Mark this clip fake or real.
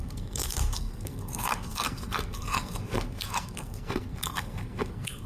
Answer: fake